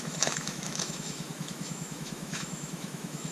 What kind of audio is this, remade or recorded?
remade